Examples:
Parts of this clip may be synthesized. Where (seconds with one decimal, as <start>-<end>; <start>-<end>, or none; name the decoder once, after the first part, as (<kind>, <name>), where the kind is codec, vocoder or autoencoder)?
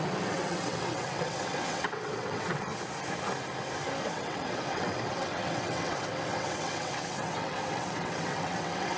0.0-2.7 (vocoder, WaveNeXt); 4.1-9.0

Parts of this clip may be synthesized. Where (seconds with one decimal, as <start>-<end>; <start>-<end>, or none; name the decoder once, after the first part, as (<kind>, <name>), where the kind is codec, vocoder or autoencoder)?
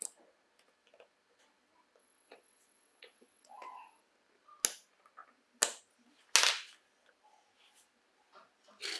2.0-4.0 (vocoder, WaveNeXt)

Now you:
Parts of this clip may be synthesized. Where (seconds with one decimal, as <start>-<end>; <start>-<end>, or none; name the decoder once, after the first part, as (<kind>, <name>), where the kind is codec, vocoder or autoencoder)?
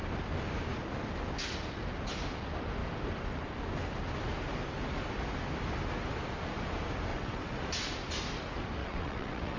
7.1-7.6 (vocoder, WaveNeXt); 8.8-9.6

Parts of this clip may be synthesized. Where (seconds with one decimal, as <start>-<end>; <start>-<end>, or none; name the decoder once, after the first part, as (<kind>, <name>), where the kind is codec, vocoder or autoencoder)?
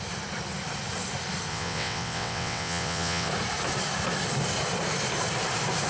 1.5-3.3 (vocoder, WaveNeXt)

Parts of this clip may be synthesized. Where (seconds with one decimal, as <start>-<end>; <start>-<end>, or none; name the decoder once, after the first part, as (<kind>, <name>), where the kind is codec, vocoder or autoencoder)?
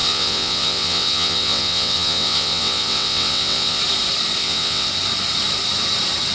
0.0-3.8 (vocoder, WaveNeXt); 4.4-4.9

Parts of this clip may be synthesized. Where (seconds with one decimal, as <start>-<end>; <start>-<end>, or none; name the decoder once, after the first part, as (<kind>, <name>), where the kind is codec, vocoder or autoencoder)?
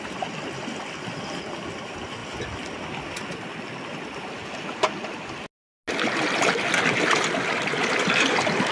none